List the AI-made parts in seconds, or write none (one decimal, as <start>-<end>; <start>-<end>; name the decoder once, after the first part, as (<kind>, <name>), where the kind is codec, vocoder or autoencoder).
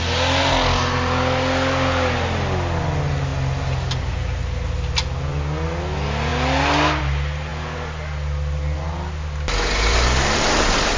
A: none